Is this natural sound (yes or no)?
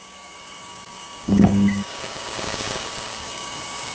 no